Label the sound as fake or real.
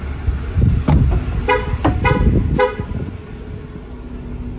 real